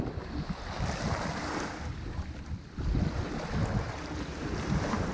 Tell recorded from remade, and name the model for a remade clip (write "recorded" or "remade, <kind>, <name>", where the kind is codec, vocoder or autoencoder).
recorded